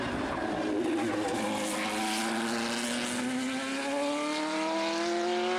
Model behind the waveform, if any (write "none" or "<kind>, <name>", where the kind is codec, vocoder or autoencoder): none